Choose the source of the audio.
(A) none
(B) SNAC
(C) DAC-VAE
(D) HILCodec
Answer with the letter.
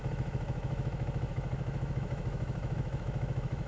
C